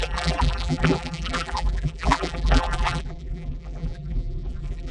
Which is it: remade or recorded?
remade